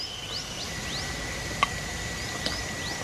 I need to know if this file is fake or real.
fake